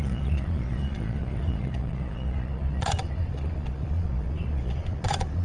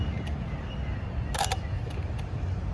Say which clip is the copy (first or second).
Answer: first